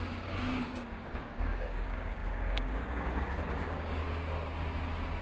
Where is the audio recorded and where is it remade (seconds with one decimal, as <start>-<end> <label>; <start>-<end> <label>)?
0.0-4.0 remade; 4.0-5.2 recorded